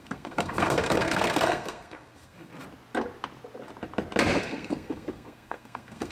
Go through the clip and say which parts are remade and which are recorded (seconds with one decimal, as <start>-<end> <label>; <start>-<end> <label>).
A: 0.0-2.5 remade; 2.5-4.4 recorded; 4.4-6.1 remade